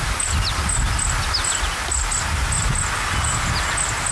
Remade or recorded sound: recorded